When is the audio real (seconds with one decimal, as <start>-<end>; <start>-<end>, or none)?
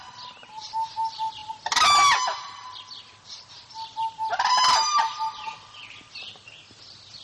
0.0-7.2